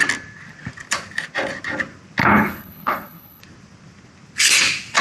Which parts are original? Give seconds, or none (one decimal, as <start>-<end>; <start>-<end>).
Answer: 0.0-2.2; 3.4-5.0